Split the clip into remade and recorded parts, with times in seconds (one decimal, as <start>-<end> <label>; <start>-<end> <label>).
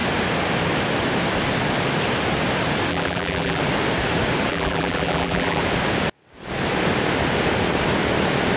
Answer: 0.0-2.9 recorded; 2.9-3.6 remade; 3.6-4.5 recorded; 4.5-5.6 remade; 5.6-8.6 recorded